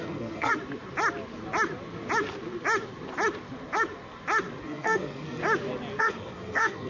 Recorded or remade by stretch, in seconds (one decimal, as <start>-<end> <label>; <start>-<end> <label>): 0.0-0.5 remade; 0.5-4.6 recorded; 4.6-5.4 remade; 5.4-6.0 recorded; 6.0-6.9 remade